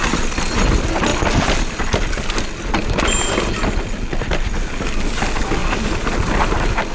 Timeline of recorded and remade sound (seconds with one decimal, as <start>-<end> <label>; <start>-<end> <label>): 0.0-1.1 recorded; 1.1-4.5 remade; 4.5-6.9 recorded